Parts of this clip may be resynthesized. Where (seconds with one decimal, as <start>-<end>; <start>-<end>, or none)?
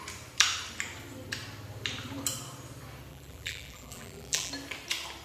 3.1-4.5